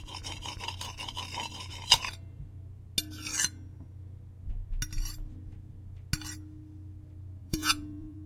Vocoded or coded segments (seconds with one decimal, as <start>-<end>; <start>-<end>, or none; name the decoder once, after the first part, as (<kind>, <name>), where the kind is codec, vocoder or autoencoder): 7.4-8.3 (vocoder, Vocos)